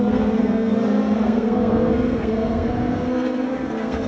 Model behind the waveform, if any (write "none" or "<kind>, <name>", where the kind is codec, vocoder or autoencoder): codec, SNAC